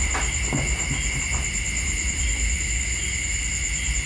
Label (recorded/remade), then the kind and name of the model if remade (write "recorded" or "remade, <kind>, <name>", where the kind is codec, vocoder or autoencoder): recorded